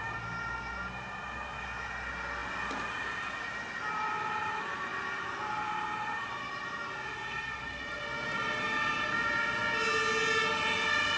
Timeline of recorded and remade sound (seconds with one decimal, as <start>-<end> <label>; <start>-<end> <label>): 0.0-11.2 recorded